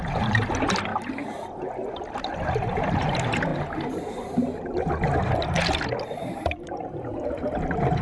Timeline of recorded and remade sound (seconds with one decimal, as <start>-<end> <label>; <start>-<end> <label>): 0.0-0.9 remade; 0.9-2.3 recorded; 2.3-3.5 remade; 3.5-6.2 recorded; 6.2-8.0 remade